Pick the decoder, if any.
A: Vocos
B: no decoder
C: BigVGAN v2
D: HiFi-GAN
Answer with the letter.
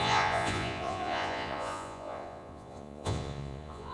A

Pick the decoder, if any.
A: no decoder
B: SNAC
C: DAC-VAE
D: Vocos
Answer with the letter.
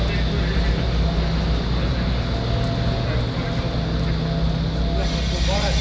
A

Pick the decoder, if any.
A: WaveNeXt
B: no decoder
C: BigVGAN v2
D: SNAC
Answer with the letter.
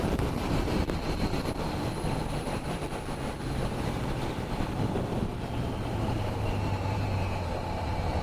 C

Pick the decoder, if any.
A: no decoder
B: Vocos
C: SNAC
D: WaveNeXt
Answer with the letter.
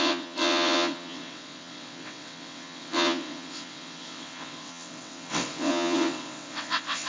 D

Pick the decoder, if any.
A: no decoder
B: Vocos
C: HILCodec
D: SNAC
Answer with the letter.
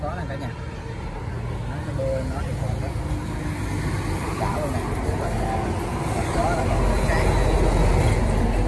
A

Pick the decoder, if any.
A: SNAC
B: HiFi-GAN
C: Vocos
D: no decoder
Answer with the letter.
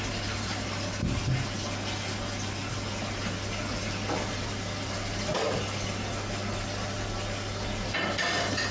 D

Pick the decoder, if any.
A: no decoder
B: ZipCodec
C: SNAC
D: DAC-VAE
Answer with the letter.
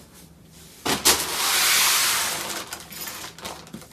A